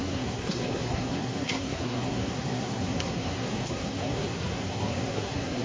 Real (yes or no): no